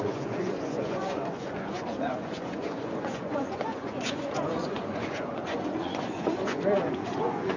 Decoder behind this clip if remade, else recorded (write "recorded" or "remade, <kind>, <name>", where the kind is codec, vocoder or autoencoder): remade, vocoder, Vocos